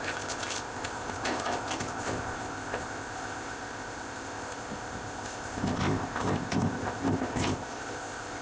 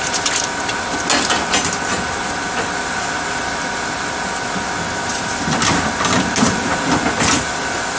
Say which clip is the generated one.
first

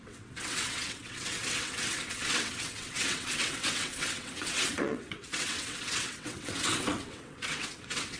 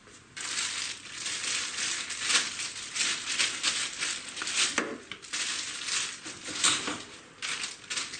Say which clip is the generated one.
first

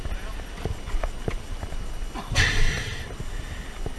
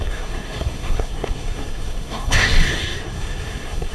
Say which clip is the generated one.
second